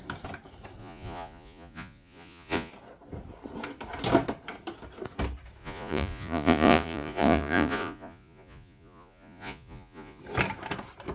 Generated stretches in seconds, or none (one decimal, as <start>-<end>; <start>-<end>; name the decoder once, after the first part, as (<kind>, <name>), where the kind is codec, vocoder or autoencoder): 0.8-2.7 (vocoder, Vocos); 5.6-10.2